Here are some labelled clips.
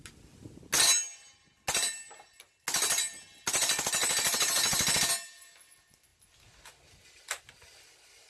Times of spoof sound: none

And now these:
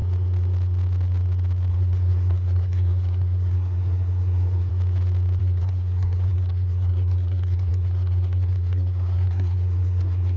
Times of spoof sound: 1.7-4.7; 5.4-10.4

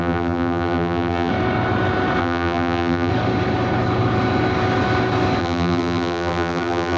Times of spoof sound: 0.0-1.3; 2.2-3.1; 5.4-7.0

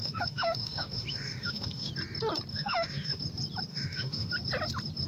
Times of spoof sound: 0.0-1.9; 2.5-3.2; 3.7-4.3

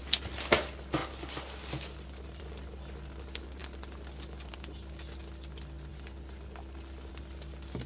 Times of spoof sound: 1.0-2.4; 3.6-4.5; 5.9-7.1

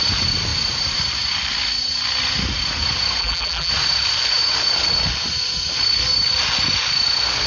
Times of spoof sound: 3.2-3.7

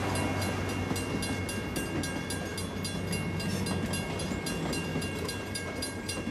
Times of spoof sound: 4.9-6.3

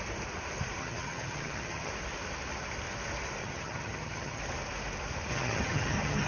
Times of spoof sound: 0.8-1.9; 3.4-4.4; 5.3-6.3